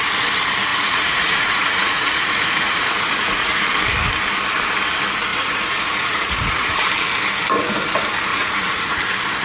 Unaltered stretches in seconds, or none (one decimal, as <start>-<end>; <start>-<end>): 0.0-0.7; 3.6-5.3; 6.8-8.3; 9.0-9.4

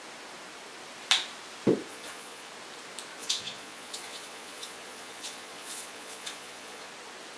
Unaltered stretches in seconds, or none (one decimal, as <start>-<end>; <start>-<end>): 0.0-1.9; 2.5-3.2; 6.9-7.4

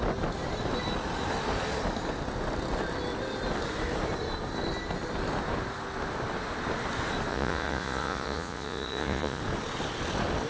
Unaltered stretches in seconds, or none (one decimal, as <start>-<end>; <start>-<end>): 0.0-7.3; 9.4-10.5

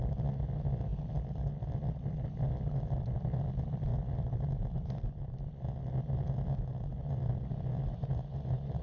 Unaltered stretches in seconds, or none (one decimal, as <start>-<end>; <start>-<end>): 0.0-8.8

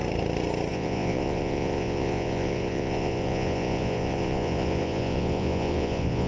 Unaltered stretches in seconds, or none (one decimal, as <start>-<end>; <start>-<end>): 0.0-0.7

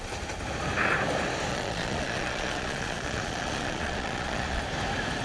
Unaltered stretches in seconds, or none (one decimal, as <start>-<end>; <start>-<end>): 0.0-1.5; 4.6-5.2

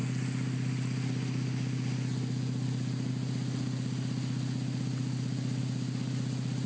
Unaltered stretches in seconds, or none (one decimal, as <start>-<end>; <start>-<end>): 0.0-6.7